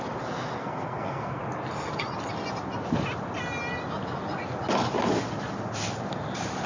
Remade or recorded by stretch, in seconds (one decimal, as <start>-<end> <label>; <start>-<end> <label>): 0.0-0.6 recorded; 0.6-1.4 remade; 1.4-6.7 recorded